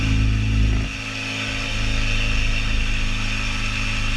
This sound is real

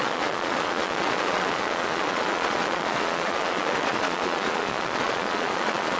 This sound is fake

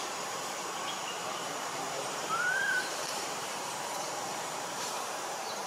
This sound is fake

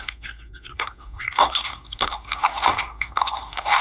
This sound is fake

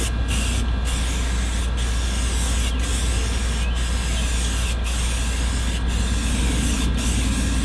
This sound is real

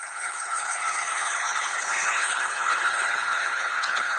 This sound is fake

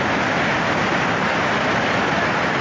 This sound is real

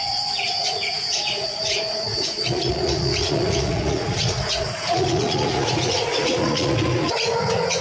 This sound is fake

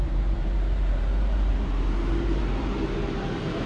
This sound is fake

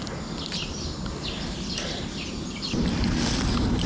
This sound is fake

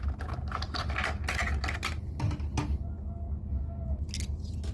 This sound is real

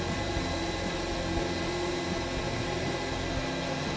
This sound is real